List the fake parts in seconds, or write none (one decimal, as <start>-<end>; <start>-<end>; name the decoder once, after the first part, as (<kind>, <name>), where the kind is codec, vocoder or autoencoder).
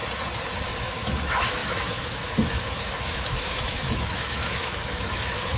0.8-5.6 (autoencoder, DAC-VAE)